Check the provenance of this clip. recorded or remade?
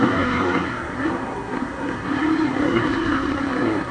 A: remade